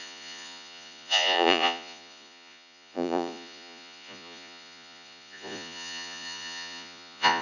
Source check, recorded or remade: remade